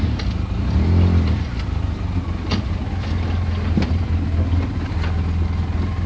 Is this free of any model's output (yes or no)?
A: yes